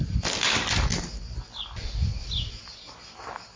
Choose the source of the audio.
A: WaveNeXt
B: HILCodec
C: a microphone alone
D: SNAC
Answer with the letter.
C